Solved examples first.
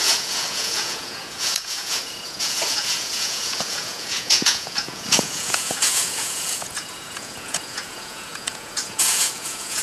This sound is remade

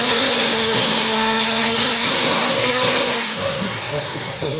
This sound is remade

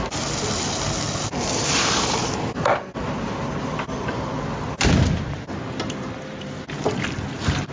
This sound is remade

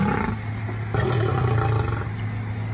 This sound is recorded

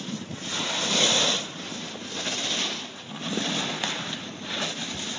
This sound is recorded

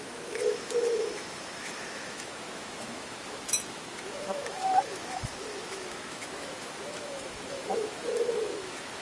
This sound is remade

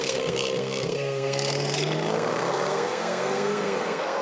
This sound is remade